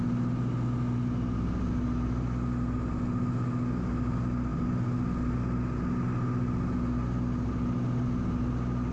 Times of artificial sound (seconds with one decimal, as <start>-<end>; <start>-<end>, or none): none